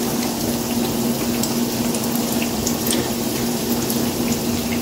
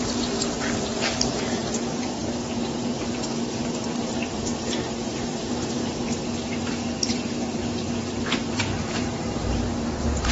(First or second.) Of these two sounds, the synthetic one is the second